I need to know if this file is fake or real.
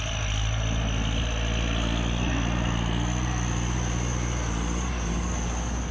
real